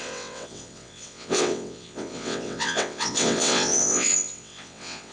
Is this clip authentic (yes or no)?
no